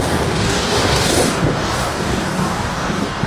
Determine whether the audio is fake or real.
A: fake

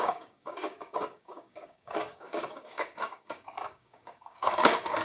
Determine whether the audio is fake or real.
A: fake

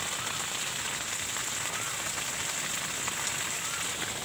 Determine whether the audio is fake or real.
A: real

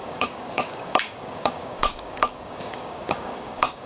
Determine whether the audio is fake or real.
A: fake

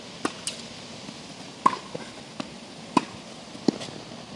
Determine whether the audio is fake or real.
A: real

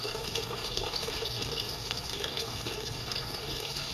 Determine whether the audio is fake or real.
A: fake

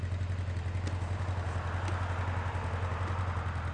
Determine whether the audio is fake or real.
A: real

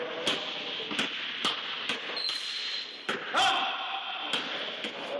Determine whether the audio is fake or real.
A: real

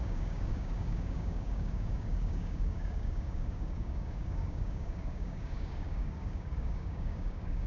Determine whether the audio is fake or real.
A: fake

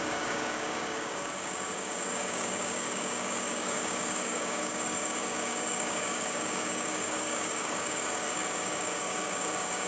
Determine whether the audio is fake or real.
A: fake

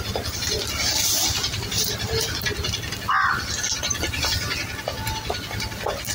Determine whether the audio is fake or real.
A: real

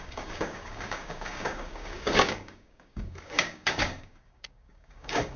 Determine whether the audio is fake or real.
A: fake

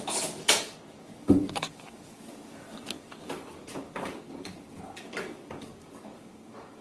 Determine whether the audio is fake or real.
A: fake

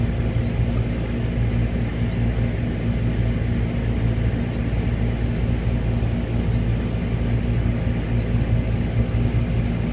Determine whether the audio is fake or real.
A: real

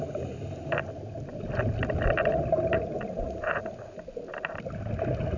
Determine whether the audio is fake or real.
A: real